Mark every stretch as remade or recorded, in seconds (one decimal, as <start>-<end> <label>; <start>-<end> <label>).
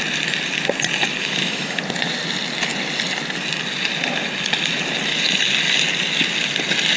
0.0-1.2 recorded; 1.2-1.8 remade; 1.8-7.0 recorded